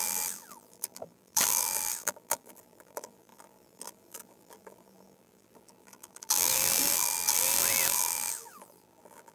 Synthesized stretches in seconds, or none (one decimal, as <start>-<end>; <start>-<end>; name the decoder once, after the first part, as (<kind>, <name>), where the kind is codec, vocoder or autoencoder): 0.0-9.3 (vocoder, BigVGAN v2)